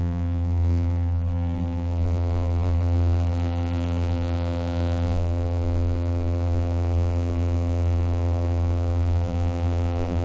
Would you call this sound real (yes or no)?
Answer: no